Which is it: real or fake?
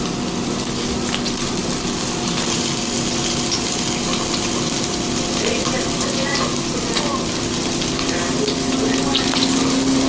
real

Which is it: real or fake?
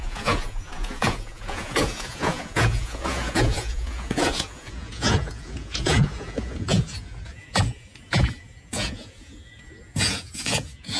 fake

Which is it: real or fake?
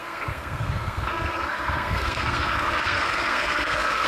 fake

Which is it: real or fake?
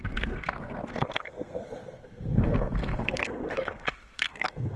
fake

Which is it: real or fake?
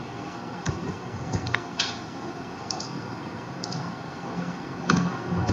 fake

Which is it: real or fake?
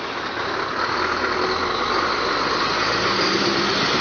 real